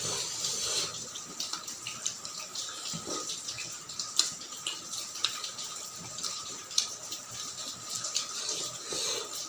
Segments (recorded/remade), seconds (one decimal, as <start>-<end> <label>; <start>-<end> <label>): 0.0-6.3 recorded; 6.3-7.3 remade; 7.3-9.5 recorded